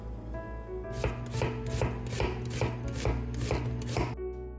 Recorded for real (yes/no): yes